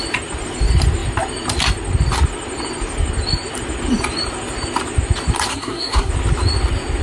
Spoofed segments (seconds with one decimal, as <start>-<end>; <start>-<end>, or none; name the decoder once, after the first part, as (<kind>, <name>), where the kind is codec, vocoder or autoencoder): 5.5-6.1 (codec, SNAC)